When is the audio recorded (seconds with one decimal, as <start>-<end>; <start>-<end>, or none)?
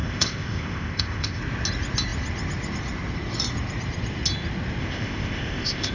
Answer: 1.4-4.8